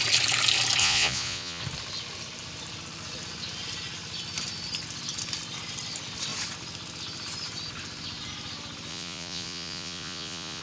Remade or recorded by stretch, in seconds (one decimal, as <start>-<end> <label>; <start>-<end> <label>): 0.0-0.8 recorded; 0.8-1.6 remade; 1.6-8.9 recorded; 8.9-10.6 remade